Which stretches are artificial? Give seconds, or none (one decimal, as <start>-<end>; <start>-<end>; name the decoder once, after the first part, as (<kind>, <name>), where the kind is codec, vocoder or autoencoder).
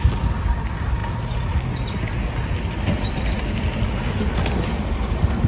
none